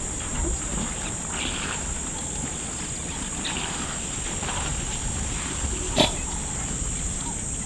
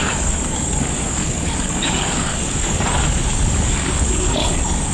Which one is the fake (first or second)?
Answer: second